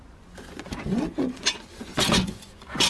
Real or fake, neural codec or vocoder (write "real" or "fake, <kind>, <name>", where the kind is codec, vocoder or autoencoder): fake, vocoder, Vocos